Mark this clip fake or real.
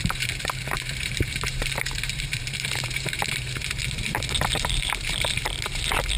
fake